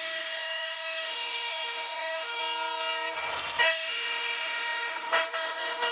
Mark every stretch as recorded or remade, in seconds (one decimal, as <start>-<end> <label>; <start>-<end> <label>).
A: 0.0-2.4 remade; 2.4-3.6 recorded; 3.6-5.9 remade